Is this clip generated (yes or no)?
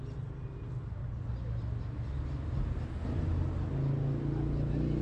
no